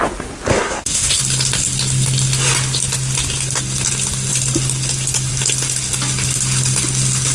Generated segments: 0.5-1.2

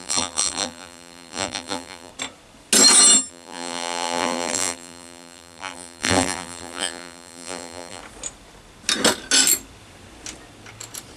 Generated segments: 0.0-2.1; 3.3-8.0

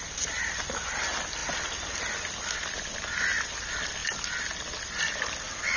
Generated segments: none

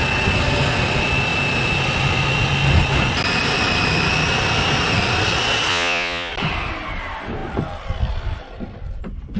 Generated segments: 5.7-6.3